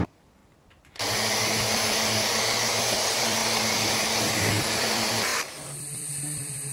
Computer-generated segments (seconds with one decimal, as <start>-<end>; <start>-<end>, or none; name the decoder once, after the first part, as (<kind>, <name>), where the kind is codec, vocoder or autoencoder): 0.0-0.4 (vocoder, BigVGAN v2); 2.8-3.4; 4.6-6.7